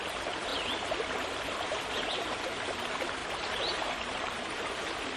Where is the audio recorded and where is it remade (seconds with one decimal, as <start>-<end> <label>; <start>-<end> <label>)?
0.0-3.2 recorded; 3.2-4.8 remade; 4.8-5.2 recorded